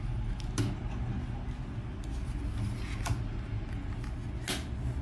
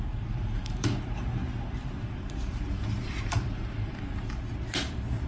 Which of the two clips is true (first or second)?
first